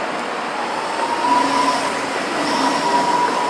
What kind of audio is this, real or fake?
real